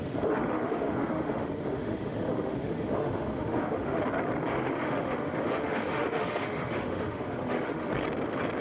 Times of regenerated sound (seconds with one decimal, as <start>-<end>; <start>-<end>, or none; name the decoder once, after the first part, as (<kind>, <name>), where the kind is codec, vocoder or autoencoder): 0.0-4.0 (autoencoder, DAC-VAE); 4.5-7.9